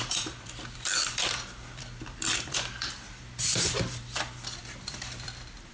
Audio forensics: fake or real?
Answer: fake